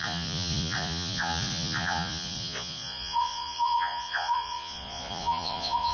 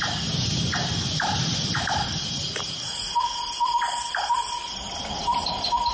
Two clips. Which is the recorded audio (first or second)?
second